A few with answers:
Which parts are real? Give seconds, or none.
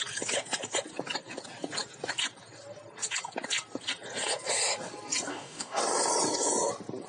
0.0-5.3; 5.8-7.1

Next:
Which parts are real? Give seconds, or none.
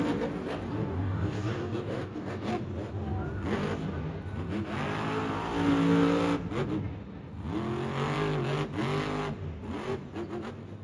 0.0-0.8; 2.5-10.8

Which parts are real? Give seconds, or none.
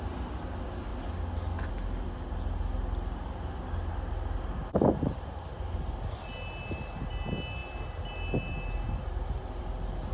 0.0-10.1